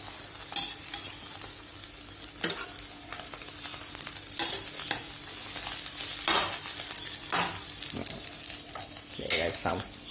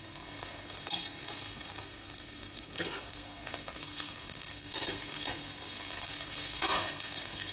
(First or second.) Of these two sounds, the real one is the first